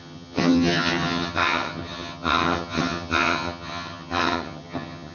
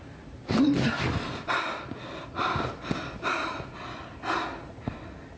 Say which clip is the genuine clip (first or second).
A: second